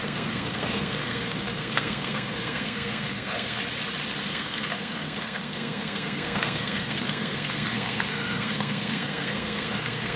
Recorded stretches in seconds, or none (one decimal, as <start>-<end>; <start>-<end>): 3.6-4.3